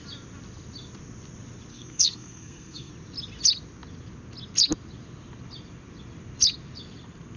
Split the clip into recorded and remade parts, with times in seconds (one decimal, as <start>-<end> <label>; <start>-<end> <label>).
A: 0.0-1.7 recorded; 1.7-2.9 remade; 2.9-7.4 recorded